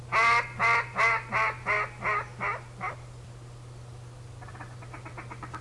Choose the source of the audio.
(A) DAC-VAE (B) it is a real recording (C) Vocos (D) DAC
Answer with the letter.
B